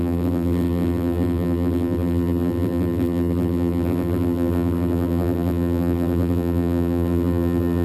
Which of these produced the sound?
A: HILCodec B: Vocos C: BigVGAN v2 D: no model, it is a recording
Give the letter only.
C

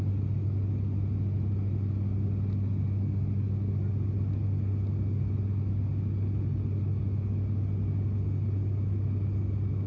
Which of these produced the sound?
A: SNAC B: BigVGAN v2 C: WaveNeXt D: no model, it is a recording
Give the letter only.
D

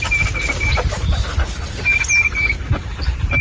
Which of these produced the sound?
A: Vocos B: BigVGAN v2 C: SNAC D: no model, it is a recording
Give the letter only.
B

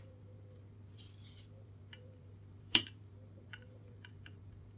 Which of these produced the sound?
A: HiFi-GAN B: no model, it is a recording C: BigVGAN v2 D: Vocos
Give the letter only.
C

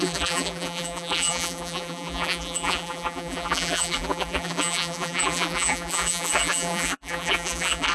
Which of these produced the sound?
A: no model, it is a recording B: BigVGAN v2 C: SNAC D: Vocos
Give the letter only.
B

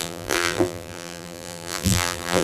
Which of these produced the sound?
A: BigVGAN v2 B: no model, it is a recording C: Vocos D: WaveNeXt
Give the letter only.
A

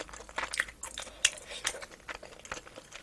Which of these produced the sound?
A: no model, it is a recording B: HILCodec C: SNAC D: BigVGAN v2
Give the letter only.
A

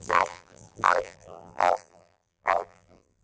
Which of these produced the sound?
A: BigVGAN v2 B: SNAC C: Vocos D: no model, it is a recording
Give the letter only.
A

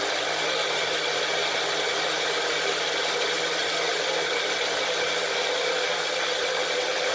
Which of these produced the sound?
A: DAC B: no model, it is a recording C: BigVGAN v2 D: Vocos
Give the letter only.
B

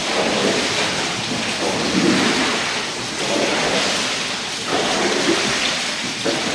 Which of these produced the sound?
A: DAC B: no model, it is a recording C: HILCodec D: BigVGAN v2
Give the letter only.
B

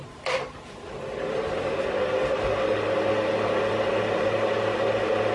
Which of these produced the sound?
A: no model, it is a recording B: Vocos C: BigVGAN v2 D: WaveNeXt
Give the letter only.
A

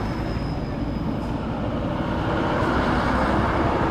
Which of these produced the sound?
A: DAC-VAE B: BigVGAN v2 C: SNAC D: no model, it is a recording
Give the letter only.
D